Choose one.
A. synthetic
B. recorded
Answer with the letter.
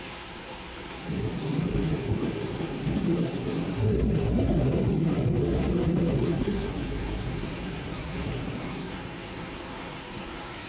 A